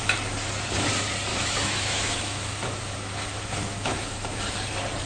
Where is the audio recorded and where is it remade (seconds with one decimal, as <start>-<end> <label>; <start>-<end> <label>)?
0.0-1.3 recorded; 1.3-4.4 remade; 4.4-5.1 recorded